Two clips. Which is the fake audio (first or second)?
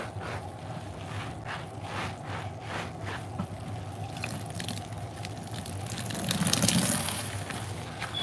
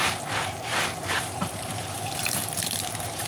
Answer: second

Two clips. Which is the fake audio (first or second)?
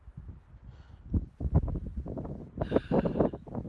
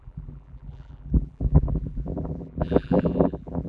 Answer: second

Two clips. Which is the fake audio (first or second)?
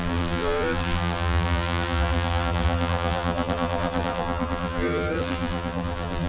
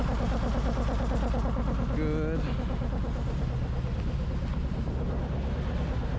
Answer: first